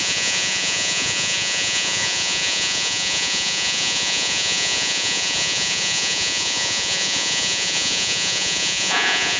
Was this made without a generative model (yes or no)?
no